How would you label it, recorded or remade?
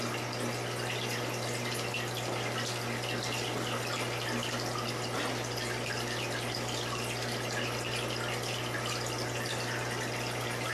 recorded